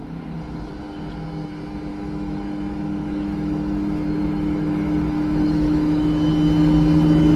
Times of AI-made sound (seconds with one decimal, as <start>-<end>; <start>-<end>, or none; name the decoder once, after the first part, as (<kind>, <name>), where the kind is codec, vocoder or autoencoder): 0.0-0.7 (autoencoder, DAC-VAE); 1.9-6.3